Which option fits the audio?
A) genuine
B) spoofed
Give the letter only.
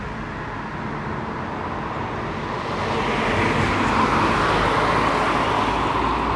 A